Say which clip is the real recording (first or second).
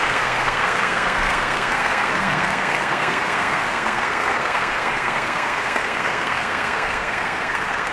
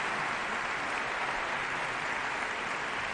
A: second